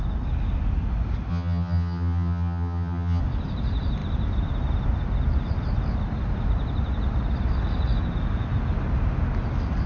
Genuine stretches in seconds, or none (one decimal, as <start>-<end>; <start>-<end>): 0.0-1.3; 3.2-9.9